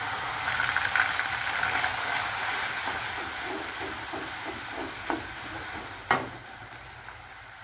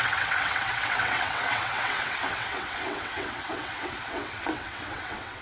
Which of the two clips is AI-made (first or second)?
second